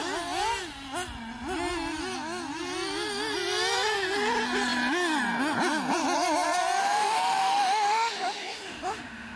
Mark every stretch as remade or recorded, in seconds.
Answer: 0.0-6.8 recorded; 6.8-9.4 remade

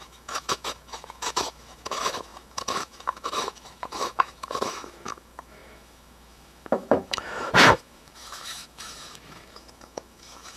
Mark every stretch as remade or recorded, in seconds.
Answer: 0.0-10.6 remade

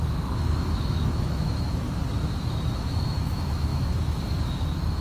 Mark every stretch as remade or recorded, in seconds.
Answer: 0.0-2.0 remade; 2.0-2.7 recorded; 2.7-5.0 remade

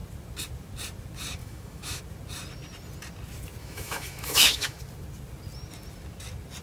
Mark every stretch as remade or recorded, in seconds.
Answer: 0.0-1.4 recorded; 1.4-2.0 remade; 2.0-3.6 recorded; 3.6-4.8 remade; 4.8-6.6 recorded

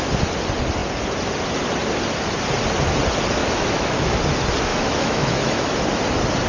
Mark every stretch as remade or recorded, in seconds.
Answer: 0.0-3.4 recorded; 3.4-4.2 remade; 4.2-4.7 recorded; 4.7-5.8 remade; 5.8-6.5 recorded